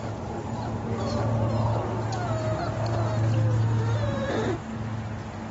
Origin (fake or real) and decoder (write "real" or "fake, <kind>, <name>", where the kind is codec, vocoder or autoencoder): real